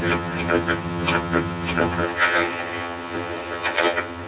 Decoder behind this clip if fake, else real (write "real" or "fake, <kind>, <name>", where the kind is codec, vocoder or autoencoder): fake, vocoder, HiFi-GAN